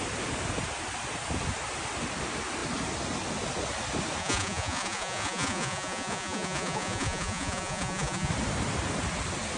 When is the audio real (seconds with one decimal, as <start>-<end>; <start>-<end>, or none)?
0.0-4.2; 8.3-9.6